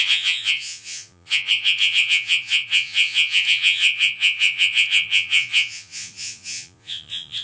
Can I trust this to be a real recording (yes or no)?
no